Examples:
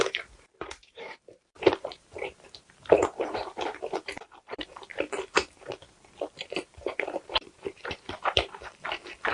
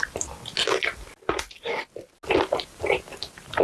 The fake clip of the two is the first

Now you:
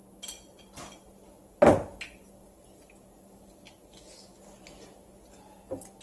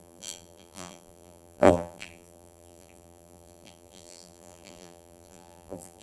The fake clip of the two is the second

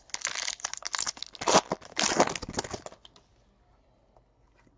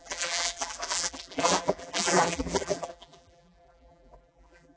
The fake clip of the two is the second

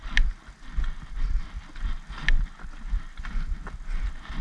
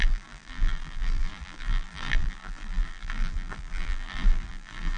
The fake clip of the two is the second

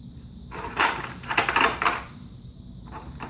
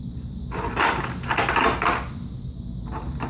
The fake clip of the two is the first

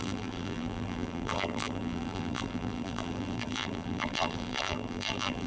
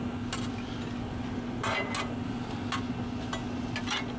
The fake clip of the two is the first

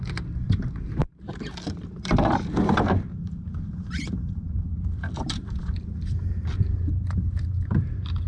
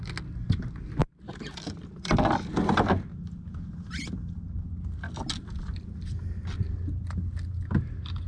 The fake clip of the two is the first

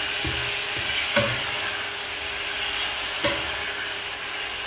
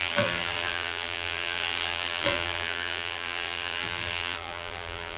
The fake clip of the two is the second